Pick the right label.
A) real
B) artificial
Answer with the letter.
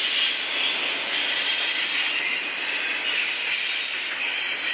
A